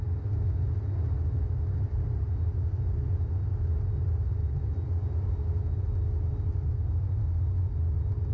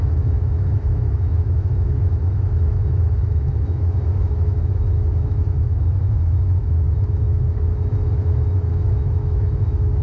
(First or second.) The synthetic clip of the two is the second